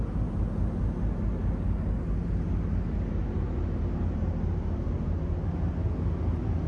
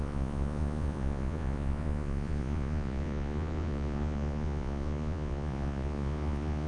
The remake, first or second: second